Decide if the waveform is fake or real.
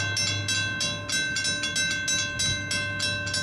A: real